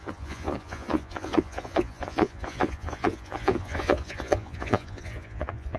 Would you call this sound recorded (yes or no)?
no